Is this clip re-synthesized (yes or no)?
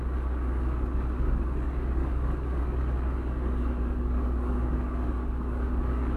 yes